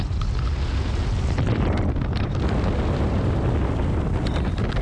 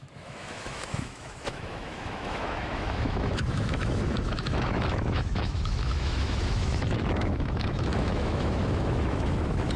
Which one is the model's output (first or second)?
second